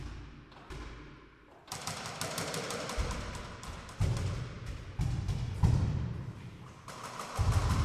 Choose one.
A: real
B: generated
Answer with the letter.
A